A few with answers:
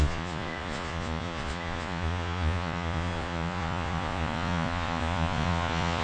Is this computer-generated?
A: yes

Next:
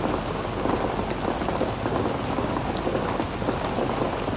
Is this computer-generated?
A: no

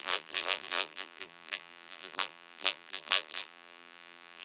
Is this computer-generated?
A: yes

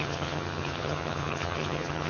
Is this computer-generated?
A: yes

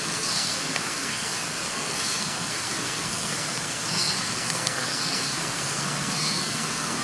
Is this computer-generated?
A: yes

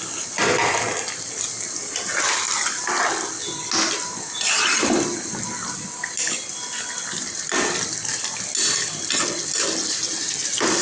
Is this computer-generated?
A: no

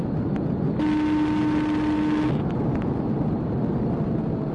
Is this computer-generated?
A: no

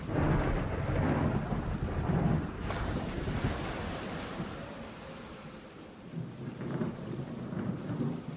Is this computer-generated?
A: yes